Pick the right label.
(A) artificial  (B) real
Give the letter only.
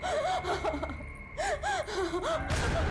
A